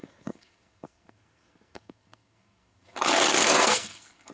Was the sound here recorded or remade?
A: remade